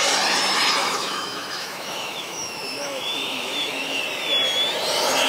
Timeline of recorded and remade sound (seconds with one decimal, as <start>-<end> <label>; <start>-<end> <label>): 0.0-0.8 recorded; 0.8-4.0 remade; 4.0-5.3 recorded